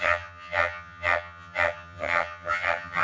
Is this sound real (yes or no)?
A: no